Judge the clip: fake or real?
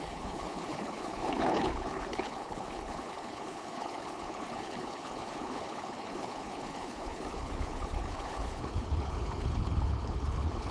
fake